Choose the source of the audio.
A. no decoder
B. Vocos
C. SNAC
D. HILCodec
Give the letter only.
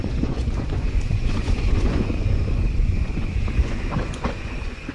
B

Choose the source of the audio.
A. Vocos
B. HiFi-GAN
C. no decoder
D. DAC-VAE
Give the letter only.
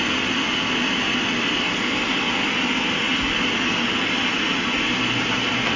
C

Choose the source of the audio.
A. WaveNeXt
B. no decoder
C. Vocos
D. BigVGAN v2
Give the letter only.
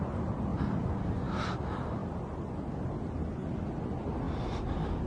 B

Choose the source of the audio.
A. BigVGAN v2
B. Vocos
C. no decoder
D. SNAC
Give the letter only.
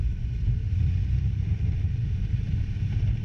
A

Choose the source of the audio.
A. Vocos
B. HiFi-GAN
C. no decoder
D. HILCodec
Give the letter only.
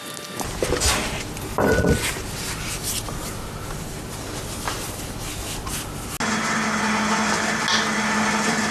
C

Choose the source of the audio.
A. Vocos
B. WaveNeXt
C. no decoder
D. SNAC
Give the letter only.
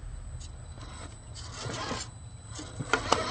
C